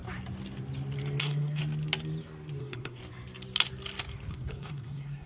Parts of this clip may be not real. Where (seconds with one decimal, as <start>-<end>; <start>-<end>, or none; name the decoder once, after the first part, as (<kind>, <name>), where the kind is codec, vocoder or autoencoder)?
1.2-1.6 (codec, SNAC); 2.6-3.0; 4.3-5.3